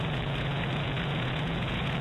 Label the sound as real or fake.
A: fake